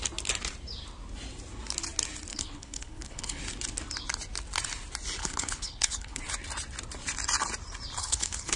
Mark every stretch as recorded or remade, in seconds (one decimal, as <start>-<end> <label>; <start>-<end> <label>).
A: 0.0-2.3 recorded; 2.3-3.4 remade; 3.4-5.2 recorded; 5.2-6.2 remade; 6.2-8.0 recorded; 8.0-8.6 remade